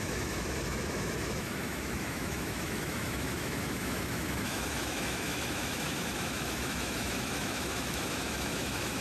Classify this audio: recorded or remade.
remade